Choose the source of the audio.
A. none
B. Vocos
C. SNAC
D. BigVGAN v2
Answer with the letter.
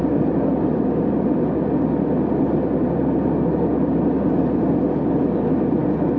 A